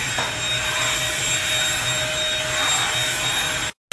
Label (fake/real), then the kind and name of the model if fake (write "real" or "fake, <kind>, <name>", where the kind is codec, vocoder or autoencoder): real